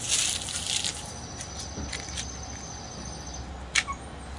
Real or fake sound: real